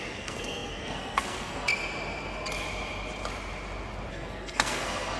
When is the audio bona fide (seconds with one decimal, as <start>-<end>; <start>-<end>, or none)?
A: 1.7-4.1